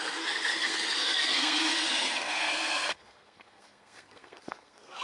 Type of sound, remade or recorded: remade